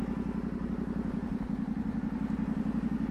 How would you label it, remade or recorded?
recorded